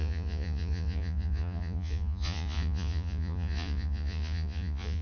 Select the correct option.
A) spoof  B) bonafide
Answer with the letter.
A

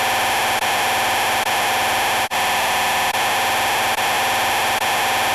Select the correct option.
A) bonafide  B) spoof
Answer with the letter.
A